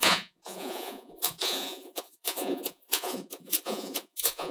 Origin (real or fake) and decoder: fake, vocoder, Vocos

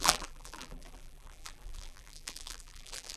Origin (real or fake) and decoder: fake, vocoder, BigVGAN v2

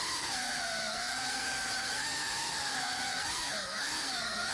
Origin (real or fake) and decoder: fake, codec, SNAC